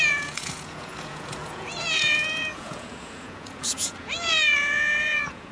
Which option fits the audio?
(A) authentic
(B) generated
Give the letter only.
B